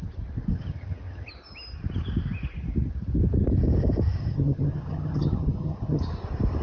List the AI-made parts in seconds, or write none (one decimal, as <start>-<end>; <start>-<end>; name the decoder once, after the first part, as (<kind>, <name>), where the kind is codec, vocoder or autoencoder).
0.5-1.3 (vocoder, HiFi-GAN); 4.2-6.0